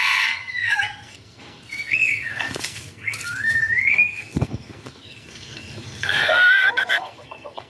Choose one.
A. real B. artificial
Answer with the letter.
B